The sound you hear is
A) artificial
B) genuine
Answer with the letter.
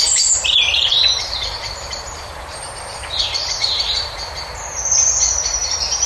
A